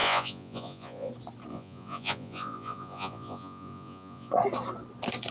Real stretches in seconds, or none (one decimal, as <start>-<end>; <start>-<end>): 1.1-1.5; 4.3-5.3